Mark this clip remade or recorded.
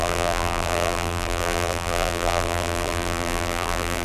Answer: remade